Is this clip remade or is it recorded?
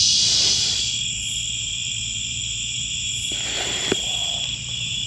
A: remade